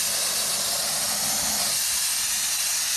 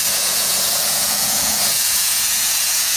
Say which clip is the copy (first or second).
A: second